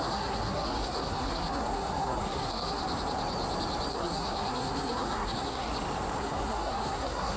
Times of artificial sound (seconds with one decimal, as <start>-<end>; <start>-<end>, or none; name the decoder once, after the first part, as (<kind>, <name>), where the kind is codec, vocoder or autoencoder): 0.0-2.8 (codec, SNAC); 3.9-5.7; 6.2-7.4